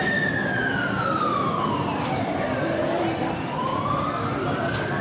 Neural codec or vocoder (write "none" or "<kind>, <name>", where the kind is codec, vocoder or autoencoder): none